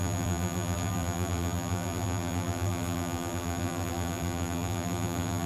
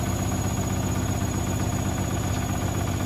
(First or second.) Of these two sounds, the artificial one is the first